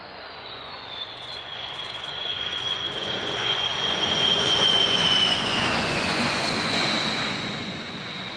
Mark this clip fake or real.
fake